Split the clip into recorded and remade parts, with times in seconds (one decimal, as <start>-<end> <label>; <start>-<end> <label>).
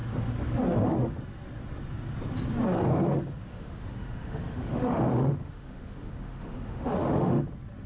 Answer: 0.0-3.5 recorded; 3.5-7.4 remade; 7.4-7.9 recorded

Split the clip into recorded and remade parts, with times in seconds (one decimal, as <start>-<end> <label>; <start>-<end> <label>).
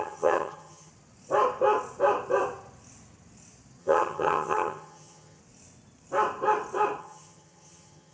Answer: 0.0-0.9 remade; 0.9-3.8 recorded; 3.8-5.4 remade; 5.4-7.0 recorded; 7.0-8.1 remade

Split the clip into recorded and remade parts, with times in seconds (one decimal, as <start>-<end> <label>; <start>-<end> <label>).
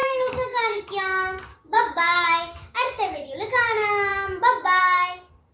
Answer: 0.0-1.0 remade; 1.0-1.5 recorded; 1.5-3.3 remade; 3.3-5.5 recorded